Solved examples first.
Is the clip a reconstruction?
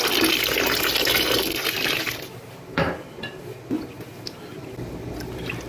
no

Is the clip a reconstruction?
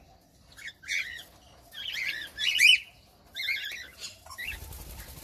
no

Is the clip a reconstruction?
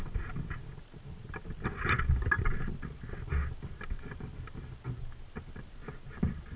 no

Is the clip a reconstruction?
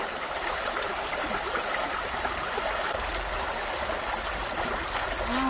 no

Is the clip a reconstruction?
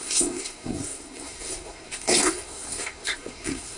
yes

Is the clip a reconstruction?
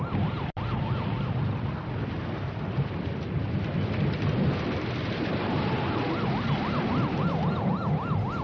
no